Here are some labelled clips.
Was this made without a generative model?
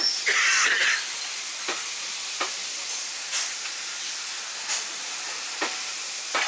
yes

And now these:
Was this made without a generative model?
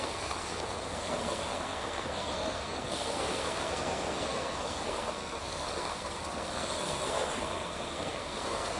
no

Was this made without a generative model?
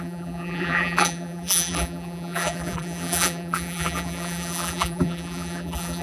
no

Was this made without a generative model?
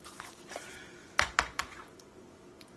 no